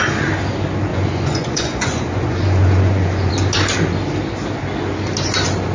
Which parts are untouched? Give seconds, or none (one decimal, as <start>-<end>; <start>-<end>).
0.0-0.9; 3.3-5.7